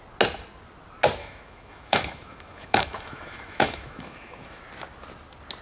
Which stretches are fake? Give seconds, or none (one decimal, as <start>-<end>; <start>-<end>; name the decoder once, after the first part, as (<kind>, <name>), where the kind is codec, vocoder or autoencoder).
1.2-4.6 (autoencoder, DAC-VAE)